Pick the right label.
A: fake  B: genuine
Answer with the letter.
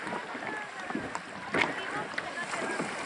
B